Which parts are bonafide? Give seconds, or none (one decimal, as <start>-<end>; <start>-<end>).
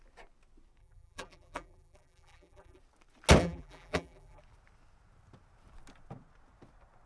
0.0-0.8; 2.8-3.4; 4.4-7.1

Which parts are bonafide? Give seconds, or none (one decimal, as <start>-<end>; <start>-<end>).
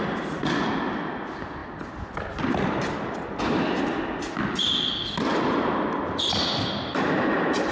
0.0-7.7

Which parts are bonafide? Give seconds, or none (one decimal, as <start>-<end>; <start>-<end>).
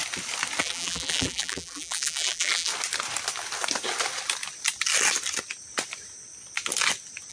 0.0-0.6; 2.7-7.3